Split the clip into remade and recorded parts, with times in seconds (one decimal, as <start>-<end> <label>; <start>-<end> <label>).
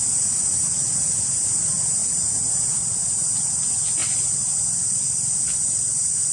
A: 0.0-6.3 recorded